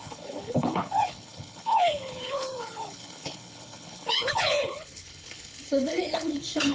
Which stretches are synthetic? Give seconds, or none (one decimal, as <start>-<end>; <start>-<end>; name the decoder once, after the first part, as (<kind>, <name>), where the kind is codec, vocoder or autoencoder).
0.0-6.7 (codec, HILCodec)